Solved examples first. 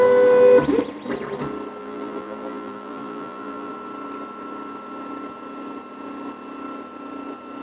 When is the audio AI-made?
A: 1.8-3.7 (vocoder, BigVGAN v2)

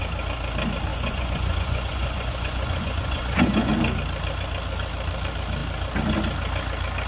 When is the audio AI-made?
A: 0.9-3.7 (vocoder, Vocos)

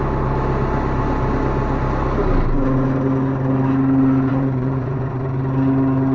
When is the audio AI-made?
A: 4.3-5.2 (vocoder, Vocos)

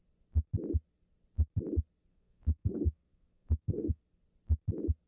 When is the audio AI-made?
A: 2.1-4.0 (codec, SNAC)